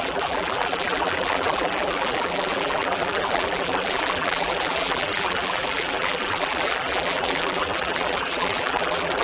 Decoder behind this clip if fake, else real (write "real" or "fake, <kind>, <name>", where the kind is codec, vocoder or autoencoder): fake, vocoder, BigVGAN v2